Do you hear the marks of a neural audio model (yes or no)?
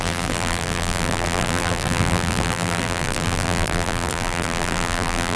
yes